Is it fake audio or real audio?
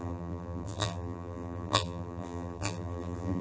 fake